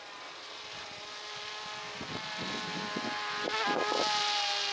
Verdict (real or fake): real